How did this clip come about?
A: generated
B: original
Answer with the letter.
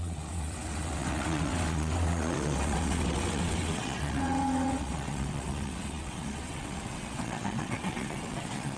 A